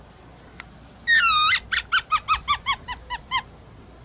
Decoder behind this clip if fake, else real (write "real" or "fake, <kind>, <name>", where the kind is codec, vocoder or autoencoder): real